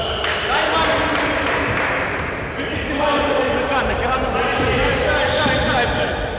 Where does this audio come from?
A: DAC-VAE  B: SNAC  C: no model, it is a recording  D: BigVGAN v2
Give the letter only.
C